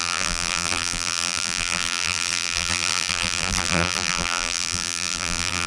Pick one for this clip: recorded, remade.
remade